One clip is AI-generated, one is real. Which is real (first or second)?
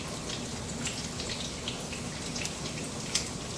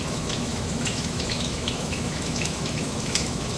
first